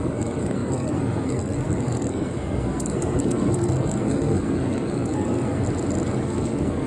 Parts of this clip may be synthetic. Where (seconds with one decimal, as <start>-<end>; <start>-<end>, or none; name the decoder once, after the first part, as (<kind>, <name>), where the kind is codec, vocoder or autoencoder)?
0.0-5.6 (codec, SNAC); 6.2-6.9